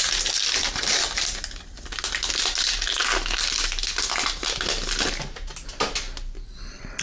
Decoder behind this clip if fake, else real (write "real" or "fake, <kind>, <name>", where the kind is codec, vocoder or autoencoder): real